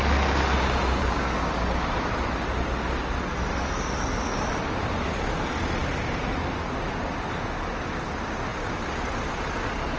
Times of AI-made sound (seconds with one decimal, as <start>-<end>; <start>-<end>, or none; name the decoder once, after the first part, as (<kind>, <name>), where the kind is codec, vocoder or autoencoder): 1.0-1.5 (codec, DAC)